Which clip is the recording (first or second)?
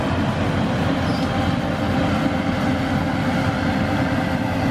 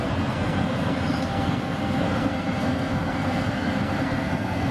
first